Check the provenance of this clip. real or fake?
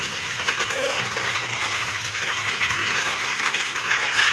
fake